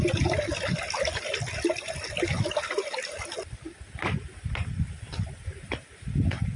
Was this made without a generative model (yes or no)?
yes